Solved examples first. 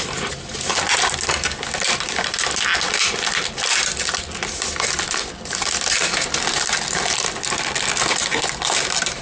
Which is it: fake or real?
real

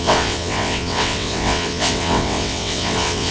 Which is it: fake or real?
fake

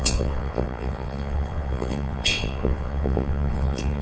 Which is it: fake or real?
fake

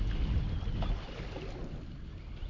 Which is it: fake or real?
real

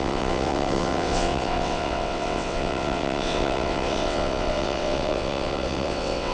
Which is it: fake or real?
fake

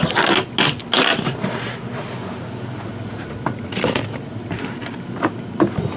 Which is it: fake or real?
real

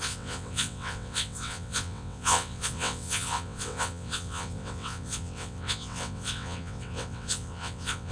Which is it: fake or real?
fake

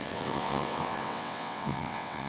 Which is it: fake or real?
fake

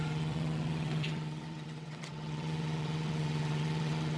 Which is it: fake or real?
fake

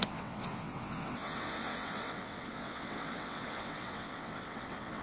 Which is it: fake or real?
fake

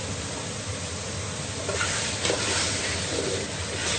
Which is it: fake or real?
real